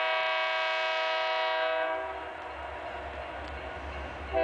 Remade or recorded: recorded